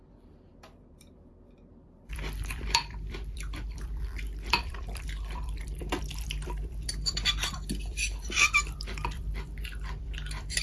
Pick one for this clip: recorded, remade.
remade